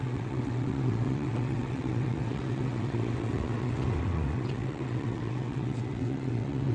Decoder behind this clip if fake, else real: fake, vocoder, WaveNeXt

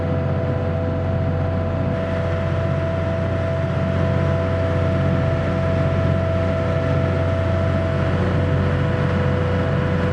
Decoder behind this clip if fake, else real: real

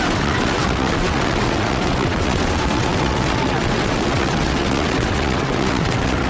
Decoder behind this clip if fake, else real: fake, vocoder, WaveNeXt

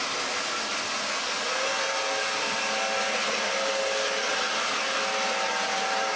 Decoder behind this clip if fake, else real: real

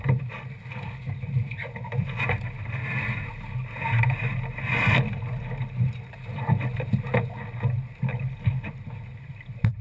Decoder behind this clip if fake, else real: real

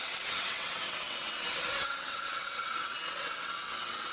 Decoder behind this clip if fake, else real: fake, vocoder, WaveNeXt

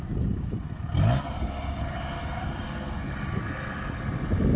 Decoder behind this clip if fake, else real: real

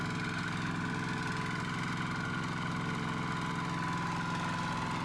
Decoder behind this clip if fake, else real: real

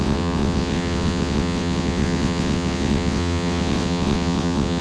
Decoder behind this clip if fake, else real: fake, vocoder, WaveNeXt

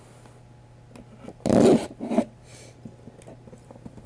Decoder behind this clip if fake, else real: real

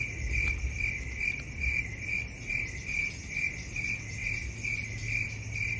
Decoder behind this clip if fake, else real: real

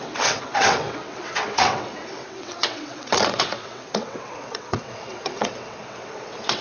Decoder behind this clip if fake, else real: fake, vocoder, WaveNeXt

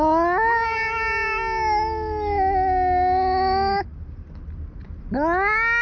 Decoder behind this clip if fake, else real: real